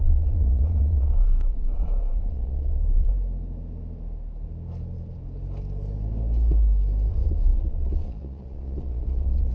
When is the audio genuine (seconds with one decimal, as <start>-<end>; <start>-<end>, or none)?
3.1-7.1